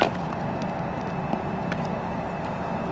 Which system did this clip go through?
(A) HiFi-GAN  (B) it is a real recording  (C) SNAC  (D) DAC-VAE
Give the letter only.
B